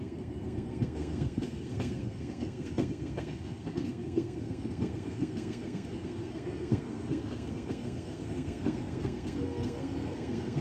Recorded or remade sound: remade